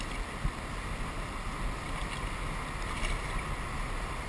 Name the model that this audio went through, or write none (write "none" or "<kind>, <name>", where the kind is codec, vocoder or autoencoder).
none